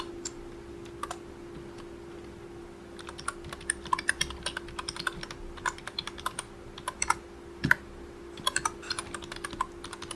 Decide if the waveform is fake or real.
real